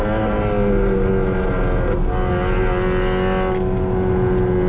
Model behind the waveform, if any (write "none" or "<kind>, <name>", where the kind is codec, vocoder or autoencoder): none